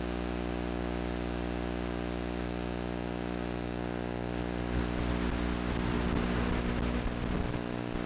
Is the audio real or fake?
real